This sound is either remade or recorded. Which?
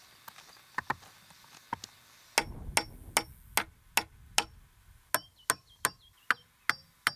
recorded